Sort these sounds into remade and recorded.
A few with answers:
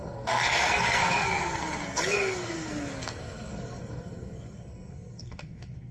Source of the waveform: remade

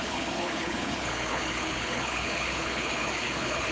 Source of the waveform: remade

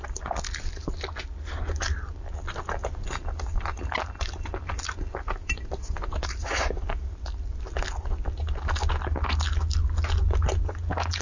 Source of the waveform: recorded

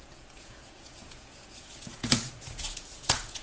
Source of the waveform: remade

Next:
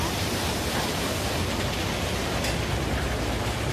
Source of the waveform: recorded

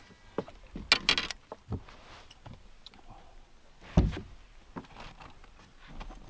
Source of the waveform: recorded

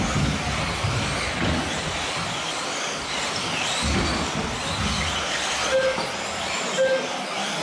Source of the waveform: recorded